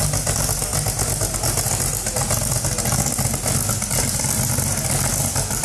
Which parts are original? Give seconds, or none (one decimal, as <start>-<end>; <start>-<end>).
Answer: 0.7-3.9